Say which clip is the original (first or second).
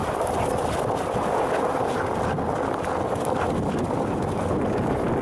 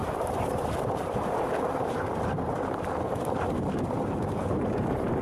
first